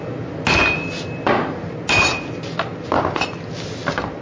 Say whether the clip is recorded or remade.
recorded